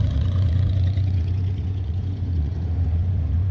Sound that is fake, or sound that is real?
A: fake